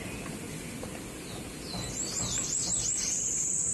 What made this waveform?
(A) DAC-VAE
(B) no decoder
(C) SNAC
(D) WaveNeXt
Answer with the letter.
B